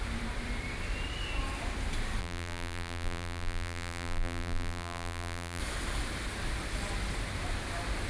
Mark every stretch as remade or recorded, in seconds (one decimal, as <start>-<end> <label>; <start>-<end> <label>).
0.0-2.2 recorded; 2.2-5.6 remade; 5.6-8.1 recorded